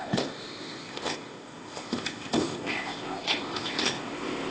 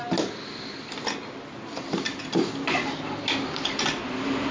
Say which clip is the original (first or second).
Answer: second